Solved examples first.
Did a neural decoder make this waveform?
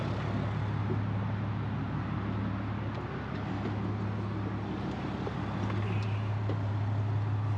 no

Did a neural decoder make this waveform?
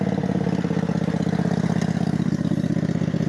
no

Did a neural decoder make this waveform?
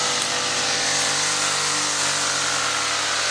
no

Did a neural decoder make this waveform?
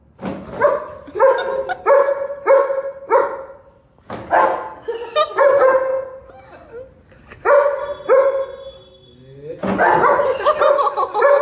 no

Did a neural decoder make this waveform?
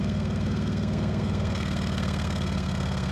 yes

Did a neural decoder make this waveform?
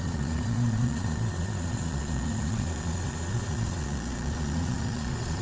yes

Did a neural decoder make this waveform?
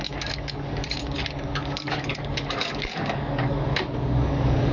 yes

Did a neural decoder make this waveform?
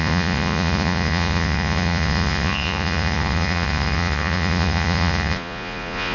yes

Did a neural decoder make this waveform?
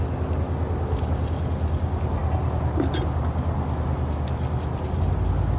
no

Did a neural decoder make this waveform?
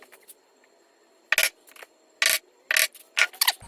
no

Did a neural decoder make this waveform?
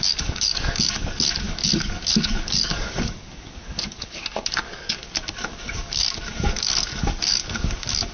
yes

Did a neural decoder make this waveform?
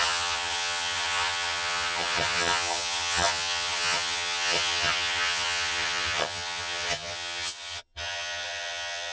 yes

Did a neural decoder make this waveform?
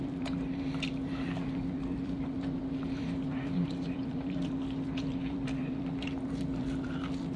yes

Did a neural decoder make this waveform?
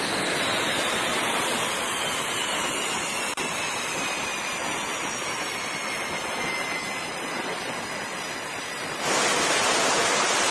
no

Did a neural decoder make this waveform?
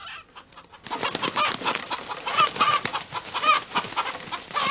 no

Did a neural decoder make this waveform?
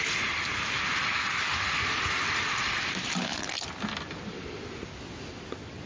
no